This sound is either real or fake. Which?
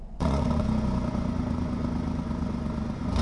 fake